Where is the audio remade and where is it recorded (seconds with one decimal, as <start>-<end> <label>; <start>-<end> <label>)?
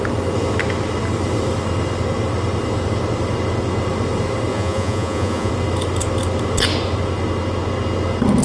0.0-4.5 recorded; 4.5-5.5 remade; 5.5-8.4 recorded